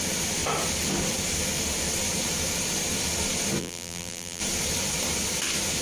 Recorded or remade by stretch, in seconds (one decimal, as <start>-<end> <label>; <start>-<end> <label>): 0.0-3.6 recorded; 3.6-4.4 remade; 4.4-5.8 recorded